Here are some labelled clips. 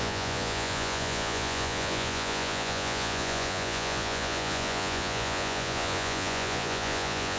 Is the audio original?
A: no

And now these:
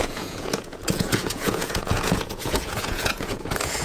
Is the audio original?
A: no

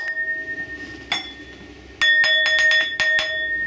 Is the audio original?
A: yes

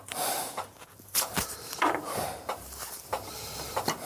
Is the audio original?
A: no